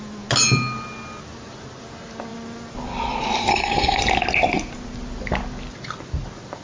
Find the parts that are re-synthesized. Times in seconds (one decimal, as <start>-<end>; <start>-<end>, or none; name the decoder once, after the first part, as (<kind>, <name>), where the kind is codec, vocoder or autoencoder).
3.5-4.0 (codec, SNAC)